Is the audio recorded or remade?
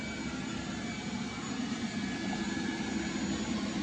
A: recorded